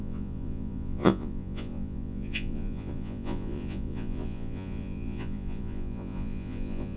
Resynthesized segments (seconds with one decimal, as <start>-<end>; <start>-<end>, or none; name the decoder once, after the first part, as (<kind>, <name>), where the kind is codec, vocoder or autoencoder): 0.0-7.0 (vocoder, Vocos)